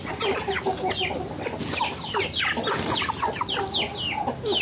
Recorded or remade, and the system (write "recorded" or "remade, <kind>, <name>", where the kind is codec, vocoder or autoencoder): recorded